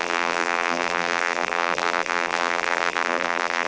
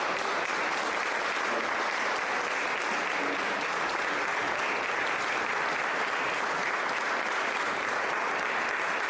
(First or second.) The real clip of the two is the second